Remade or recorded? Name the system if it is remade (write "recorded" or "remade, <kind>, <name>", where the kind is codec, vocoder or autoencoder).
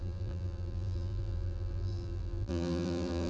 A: remade, vocoder, BigVGAN v2